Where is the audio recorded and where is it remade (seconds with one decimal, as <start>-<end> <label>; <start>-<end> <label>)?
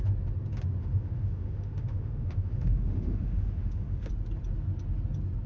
0.0-0.8 recorded; 0.8-4.1 remade; 4.1-5.5 recorded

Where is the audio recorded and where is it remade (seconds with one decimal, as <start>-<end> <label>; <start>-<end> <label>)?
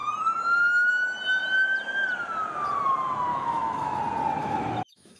0.0-3.3 recorded; 3.3-4.0 remade; 4.0-4.4 recorded; 4.4-5.2 remade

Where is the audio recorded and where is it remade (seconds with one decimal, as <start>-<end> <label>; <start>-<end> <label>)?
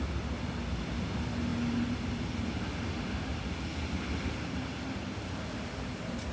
0.0-6.3 recorded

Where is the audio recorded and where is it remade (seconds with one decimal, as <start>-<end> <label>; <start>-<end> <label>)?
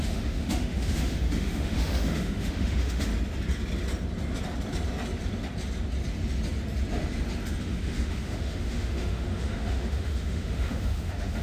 0.0-3.1 remade; 3.1-7.6 recorded; 7.6-11.4 remade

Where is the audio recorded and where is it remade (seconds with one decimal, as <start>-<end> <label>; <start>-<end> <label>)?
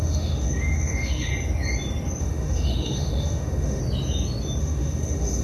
0.0-1.3 remade; 1.3-2.2 recorded; 2.2-3.8 remade; 3.8-4.6 recorded; 4.6-5.4 remade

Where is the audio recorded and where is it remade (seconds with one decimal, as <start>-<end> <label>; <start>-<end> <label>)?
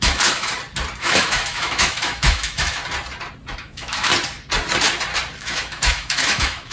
0.0-0.5 remade; 0.5-1.0 recorded; 1.0-2.8 remade; 2.8-3.6 recorded; 3.6-4.1 remade; 4.1-5.4 recorded; 5.4-6.7 remade